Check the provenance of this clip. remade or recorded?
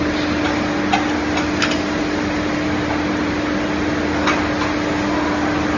recorded